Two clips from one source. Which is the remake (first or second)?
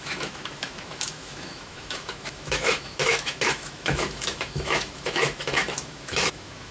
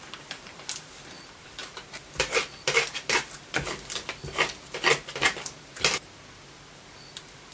first